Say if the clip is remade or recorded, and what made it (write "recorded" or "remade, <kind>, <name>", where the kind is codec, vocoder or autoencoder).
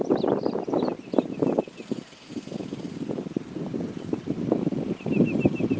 recorded